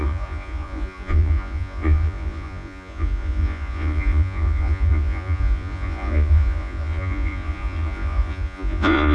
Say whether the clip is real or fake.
fake